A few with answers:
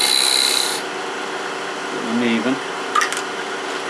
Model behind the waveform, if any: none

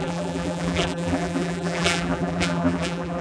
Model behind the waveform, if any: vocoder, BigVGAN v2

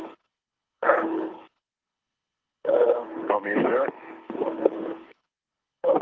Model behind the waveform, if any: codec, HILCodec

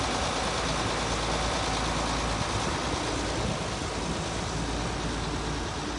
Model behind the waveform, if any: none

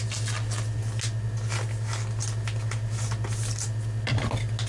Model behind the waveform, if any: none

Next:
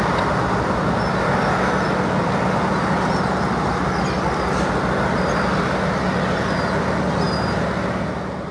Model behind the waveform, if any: none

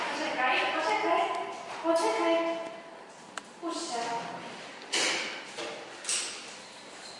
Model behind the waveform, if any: none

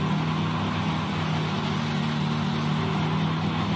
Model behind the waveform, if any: none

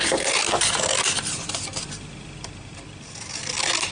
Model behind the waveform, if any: none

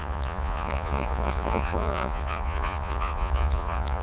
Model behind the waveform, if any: vocoder, Vocos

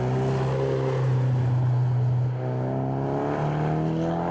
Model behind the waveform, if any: none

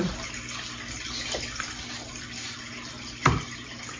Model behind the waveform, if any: none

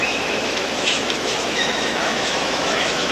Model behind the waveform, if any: autoencoder, DAC-VAE